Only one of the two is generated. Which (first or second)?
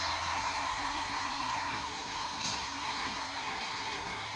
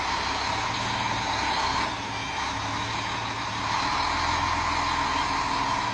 first